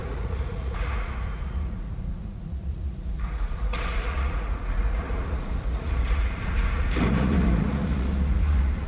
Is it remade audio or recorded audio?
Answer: remade